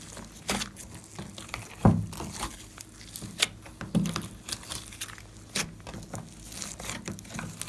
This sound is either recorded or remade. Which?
recorded